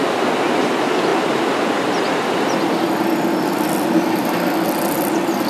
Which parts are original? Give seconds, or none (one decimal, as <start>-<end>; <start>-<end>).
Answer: 0.0-5.5